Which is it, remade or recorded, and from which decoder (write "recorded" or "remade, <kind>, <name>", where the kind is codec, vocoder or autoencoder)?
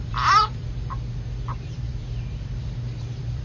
remade, vocoder, BigVGAN v2